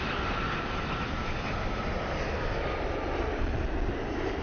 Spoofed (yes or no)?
no